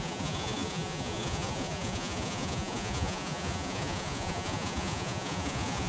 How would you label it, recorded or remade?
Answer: remade